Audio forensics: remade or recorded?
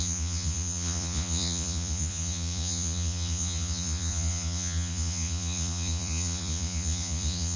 remade